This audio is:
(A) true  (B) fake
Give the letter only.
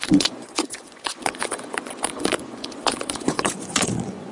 B